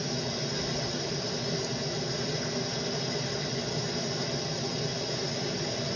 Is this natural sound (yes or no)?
yes